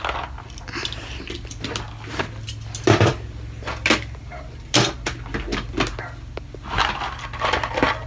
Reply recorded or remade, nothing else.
recorded